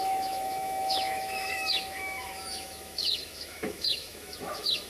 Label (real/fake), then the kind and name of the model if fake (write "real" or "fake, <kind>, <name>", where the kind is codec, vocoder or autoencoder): fake, autoencoder, DAC-VAE